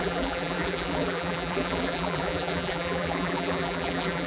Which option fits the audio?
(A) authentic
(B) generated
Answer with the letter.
B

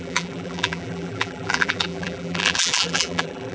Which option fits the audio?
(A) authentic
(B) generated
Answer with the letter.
B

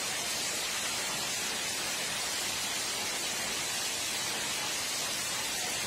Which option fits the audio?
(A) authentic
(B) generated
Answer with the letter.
A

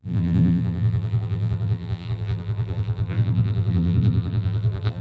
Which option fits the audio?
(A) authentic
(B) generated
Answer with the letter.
B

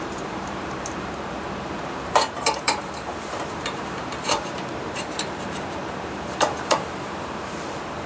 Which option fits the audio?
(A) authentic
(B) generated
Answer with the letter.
B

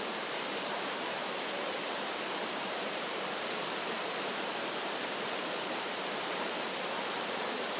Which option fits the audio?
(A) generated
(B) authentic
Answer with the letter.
A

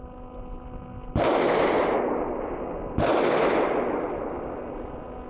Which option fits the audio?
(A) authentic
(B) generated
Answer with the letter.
A